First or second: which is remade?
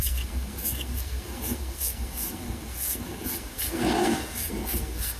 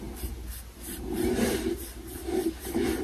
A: first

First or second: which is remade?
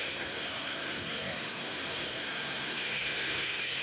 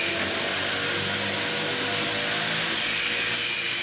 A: first